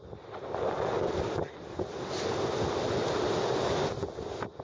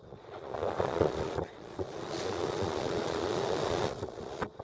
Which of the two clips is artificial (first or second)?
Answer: second